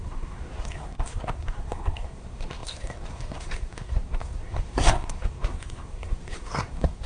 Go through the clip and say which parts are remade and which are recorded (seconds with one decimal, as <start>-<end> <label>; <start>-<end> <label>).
0.0-7.1 remade